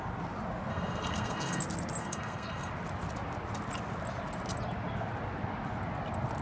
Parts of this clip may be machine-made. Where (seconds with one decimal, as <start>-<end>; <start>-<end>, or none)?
0.7-1.6; 2.0-2.7